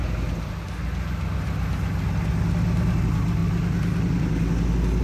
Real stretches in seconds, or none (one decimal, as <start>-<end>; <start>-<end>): 0.0-5.0